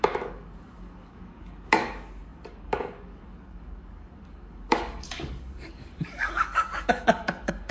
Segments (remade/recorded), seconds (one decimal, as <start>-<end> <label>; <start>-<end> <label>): 0.0-7.7 remade